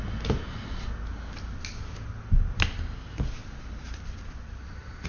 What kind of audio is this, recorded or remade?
recorded